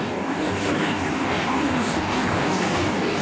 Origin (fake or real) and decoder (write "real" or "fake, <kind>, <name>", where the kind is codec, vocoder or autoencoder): fake, codec, DAC